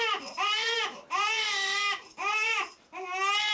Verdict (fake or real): fake